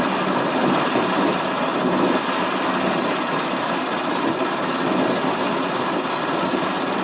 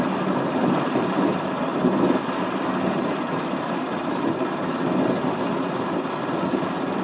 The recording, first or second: first